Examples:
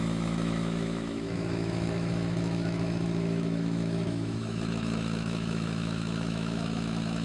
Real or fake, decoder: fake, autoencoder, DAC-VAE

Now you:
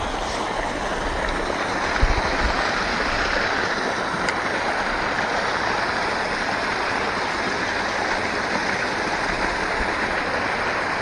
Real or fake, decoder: real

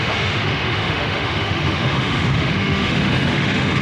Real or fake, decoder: fake, autoencoder, DAC-VAE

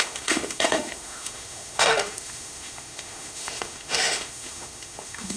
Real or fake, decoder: fake, autoencoder, DAC-VAE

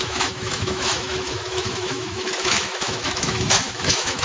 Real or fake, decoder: fake, autoencoder, DAC-VAE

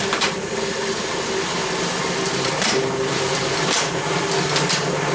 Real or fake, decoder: real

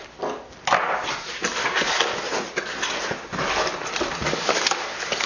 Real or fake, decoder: real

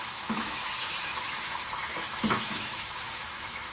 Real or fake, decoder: fake, autoencoder, DAC-VAE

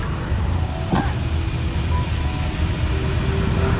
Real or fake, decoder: real